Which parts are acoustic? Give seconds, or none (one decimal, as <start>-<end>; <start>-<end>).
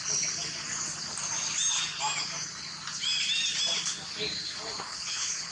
0.0-4.9